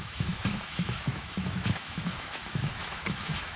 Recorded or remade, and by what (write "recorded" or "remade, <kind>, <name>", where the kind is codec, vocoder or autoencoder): remade, autoencoder, DAC-VAE